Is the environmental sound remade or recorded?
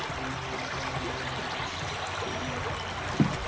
recorded